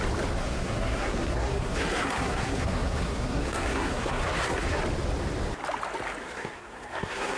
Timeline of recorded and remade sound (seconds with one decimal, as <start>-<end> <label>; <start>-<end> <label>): 0.0-0.4 recorded; 0.4-4.8 remade; 4.8-6.2 recorded; 6.2-7.4 remade